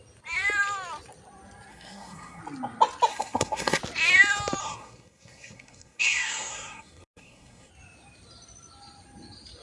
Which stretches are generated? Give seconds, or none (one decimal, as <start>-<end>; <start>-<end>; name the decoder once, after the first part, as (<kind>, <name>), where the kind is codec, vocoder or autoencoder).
1.7-2.4 (codec, SNAC); 3.1-3.8; 4.6-7.7